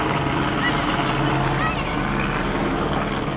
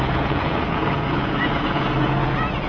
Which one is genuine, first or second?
first